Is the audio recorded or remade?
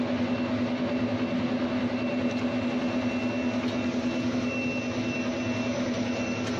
recorded